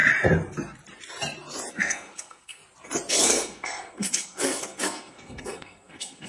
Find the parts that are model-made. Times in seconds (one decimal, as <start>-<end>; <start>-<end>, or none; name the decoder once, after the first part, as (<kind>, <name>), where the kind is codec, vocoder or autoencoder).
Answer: 1.7-2.6 (codec, SNAC); 3.1-6.3